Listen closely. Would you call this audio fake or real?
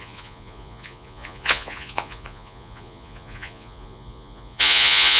fake